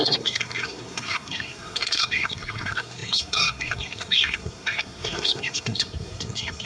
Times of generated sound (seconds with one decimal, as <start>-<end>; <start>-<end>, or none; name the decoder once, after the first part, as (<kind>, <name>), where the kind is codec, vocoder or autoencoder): 0.0-6.7 (codec, SNAC)